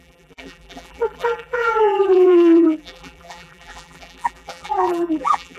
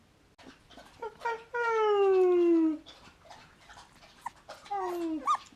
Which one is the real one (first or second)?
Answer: second